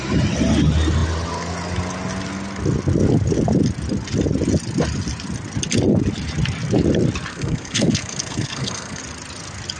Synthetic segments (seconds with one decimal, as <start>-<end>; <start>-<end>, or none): 7.3-9.0